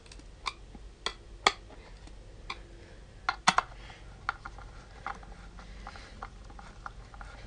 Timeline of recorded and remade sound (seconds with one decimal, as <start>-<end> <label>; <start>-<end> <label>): 0.0-7.5 recorded